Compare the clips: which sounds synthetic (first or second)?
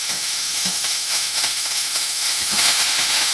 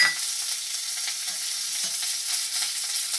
first